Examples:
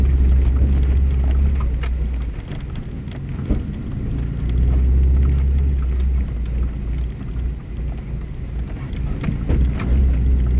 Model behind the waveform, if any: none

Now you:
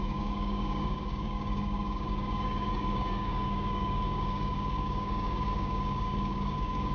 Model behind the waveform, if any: codec, DAC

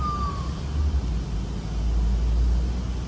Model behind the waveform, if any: none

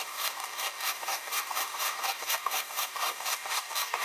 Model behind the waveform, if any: codec, DAC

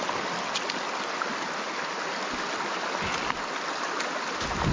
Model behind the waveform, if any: none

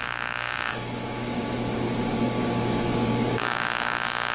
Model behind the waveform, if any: codec, DAC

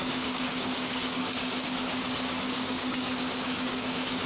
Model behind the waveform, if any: codec, DAC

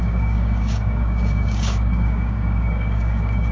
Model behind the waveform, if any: codec, DAC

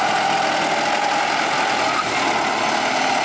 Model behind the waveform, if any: none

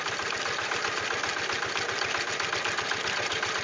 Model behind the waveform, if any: none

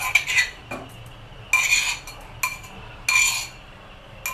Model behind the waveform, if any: none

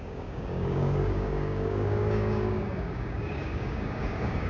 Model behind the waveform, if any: codec, DAC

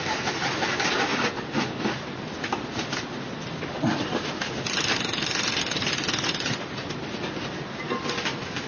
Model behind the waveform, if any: none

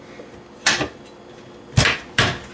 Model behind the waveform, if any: none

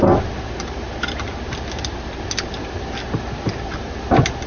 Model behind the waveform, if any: none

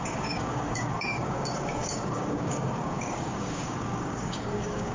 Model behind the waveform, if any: codec, DAC